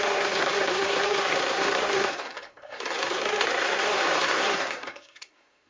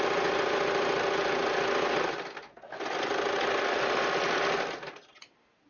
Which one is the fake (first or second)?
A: first